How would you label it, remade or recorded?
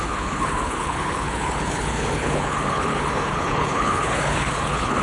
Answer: remade